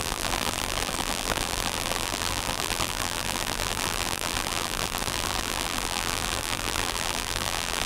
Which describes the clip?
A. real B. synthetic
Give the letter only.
B